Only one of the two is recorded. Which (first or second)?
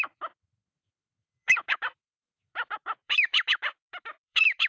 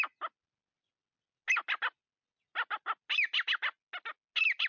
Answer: second